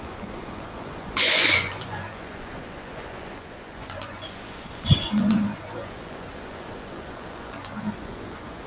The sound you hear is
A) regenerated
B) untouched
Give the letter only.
A